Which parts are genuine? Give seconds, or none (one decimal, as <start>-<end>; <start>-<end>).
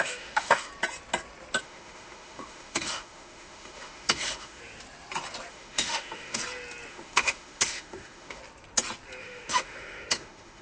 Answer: 0.7-1.6; 4.6-5.5; 6.4-6.9; 8.4-9.2